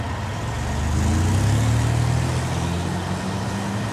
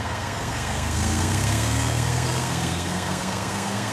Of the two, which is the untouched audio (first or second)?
first